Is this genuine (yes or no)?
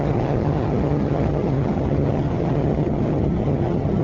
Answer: no